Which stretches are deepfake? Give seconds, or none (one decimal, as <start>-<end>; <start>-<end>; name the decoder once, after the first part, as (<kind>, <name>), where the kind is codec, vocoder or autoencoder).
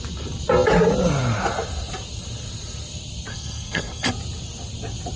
3.3-4.1 (codec, SNAC)